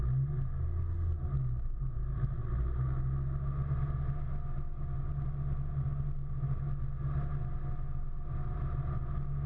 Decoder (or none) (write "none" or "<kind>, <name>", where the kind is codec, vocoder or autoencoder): none